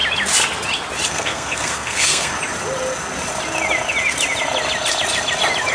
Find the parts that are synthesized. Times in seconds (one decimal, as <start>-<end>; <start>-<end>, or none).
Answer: 1.1-2.3